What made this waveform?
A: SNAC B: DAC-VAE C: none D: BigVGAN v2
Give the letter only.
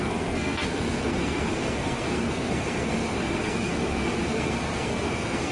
A